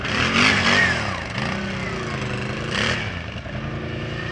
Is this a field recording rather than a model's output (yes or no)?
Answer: yes